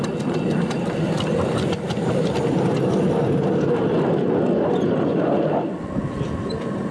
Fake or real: real